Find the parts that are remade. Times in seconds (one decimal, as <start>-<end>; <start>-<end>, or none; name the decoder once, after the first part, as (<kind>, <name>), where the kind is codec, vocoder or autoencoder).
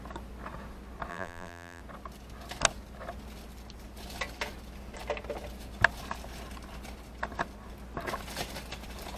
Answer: 1.1-1.8 (vocoder, BigVGAN v2)